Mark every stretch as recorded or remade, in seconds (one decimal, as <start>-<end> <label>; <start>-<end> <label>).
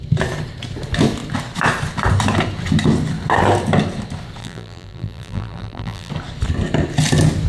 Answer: 0.0-4.4 recorded; 4.4-6.1 remade; 6.1-7.5 recorded